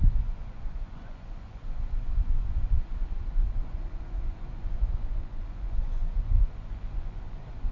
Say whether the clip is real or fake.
fake